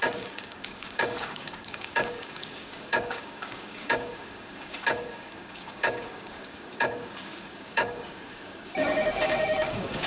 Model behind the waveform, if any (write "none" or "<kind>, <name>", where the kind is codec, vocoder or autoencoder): codec, DAC